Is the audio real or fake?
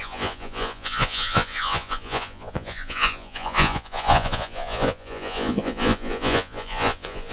fake